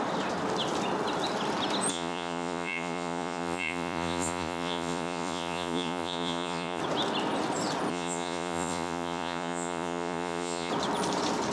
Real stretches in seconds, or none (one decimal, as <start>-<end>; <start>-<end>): 0.0-1.9; 6.8-7.9; 10.7-11.5